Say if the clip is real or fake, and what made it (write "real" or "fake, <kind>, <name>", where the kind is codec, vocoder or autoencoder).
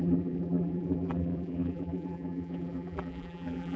fake, vocoder, BigVGAN v2